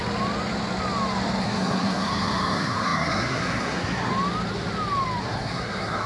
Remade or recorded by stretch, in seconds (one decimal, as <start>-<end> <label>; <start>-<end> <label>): 0.0-1.4 recorded; 1.4-4.1 remade; 4.1-5.2 recorded; 5.2-6.1 remade